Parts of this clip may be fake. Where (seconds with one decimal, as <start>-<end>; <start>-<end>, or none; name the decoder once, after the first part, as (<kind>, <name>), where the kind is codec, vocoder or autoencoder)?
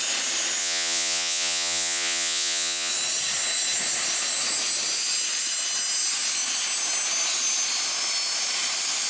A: 0.6-2.9 (vocoder, Vocos)